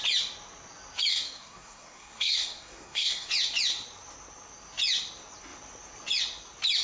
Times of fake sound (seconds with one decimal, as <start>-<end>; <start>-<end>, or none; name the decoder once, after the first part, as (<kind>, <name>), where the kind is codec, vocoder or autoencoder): 1.1-3.3 (codec, SNAC)